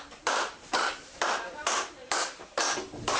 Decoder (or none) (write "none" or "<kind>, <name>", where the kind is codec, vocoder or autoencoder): vocoder, BigVGAN v2